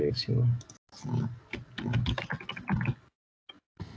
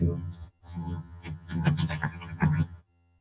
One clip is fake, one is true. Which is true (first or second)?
first